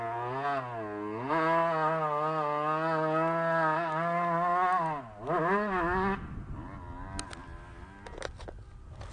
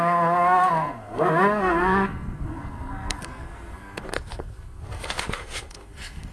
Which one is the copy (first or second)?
second